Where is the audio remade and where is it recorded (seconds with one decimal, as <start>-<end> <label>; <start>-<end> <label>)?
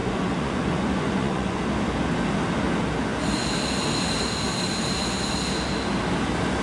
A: 0.0-1.6 remade; 1.6-6.6 recorded